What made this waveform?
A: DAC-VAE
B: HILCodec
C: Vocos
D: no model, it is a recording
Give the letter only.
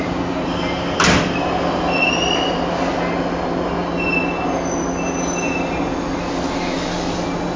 D